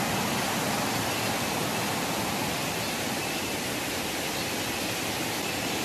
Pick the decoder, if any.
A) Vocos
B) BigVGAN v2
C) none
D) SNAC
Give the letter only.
C